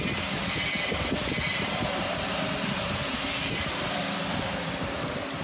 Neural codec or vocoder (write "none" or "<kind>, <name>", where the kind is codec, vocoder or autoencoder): vocoder, BigVGAN v2